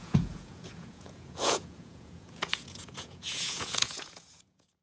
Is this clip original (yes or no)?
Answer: no